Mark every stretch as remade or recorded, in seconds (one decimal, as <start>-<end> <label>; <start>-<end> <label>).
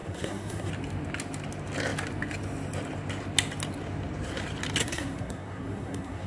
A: 0.0-0.7 remade; 0.7-4.8 recorded; 4.8-6.3 remade